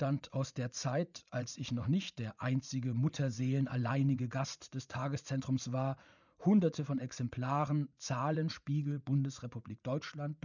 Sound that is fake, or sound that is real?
fake